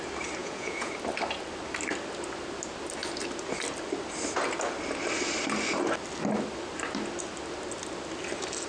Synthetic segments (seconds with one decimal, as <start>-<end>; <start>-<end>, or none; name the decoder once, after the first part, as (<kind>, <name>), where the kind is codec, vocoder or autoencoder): 0.4-0.9 (vocoder, Vocos)